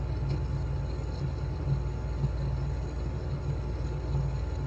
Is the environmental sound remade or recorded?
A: recorded